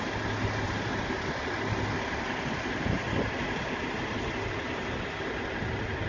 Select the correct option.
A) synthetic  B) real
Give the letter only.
B